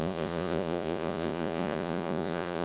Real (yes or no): no